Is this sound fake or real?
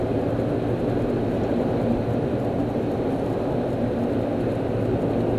real